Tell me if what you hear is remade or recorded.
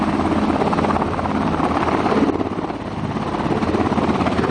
recorded